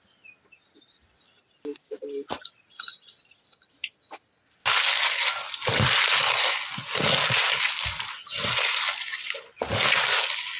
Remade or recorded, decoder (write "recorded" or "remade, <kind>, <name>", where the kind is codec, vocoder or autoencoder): recorded